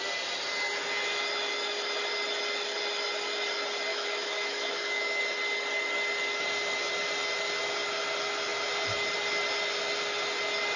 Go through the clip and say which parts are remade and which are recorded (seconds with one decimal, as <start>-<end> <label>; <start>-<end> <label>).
0.0-3.9 recorded; 3.9-5.2 remade; 5.2-10.8 recorded

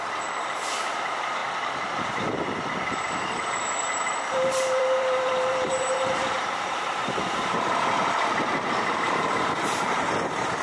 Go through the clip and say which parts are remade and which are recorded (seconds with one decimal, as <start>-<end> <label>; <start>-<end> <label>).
0.0-1.4 remade; 1.4-3.4 recorded; 3.4-10.6 remade

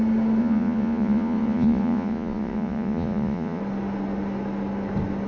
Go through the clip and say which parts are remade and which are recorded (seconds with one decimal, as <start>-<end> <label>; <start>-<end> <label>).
0.0-0.4 recorded; 0.4-3.6 remade; 3.6-5.3 recorded

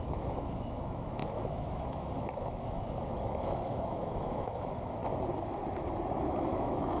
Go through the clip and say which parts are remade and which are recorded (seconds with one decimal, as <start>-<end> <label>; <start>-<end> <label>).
0.0-5.0 remade; 5.0-6.2 recorded; 6.2-7.0 remade

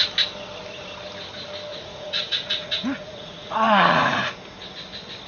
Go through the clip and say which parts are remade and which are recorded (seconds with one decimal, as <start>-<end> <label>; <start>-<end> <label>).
0.0-1.7 recorded; 1.7-4.3 remade; 4.3-5.3 recorded